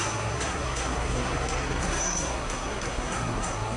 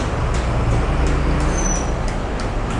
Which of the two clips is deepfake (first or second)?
first